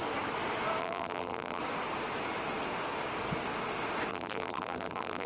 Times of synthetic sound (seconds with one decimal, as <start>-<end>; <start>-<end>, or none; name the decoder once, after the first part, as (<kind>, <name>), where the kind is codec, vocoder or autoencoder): 0.8-1.6 (vocoder, BigVGAN v2); 4.1-5.3